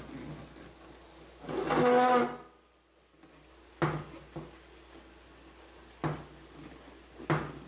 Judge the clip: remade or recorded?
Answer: recorded